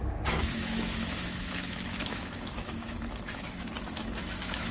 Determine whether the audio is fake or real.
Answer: fake